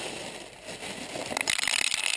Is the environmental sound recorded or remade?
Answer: recorded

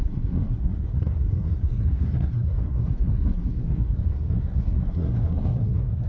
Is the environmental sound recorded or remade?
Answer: remade